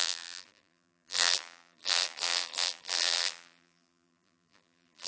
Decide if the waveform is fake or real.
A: fake